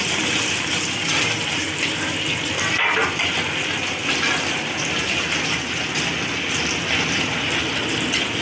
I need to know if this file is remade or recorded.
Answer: recorded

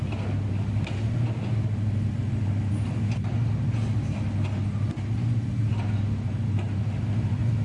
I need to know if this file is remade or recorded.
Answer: recorded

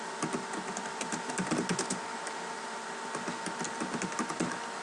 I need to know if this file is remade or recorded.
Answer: recorded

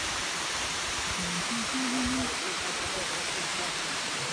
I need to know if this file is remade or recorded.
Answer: remade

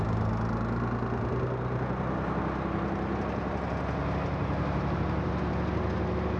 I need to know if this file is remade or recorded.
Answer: recorded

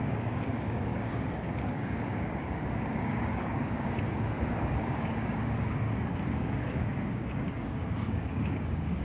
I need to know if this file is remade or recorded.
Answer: remade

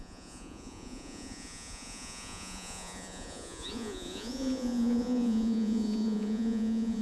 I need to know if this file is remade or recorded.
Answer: remade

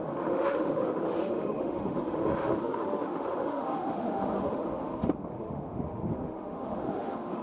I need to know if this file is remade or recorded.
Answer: remade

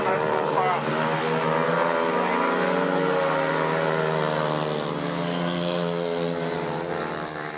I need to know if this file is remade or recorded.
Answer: recorded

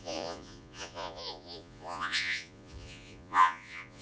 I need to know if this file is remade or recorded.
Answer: remade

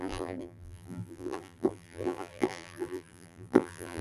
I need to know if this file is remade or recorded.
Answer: remade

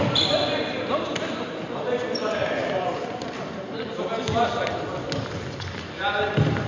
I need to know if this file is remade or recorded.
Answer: recorded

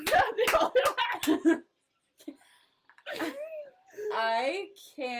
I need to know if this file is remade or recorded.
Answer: recorded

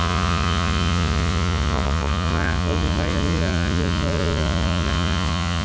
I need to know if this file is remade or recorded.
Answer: remade